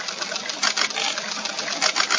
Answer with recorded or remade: recorded